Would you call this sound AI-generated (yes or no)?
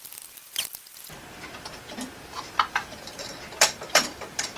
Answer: yes